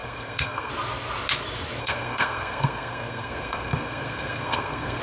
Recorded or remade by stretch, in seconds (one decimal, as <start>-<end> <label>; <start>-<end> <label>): 0.0-0.7 remade; 0.7-1.8 recorded; 1.8-5.0 remade